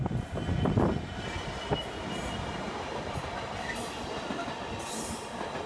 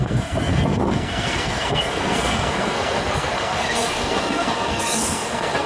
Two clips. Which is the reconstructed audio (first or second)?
second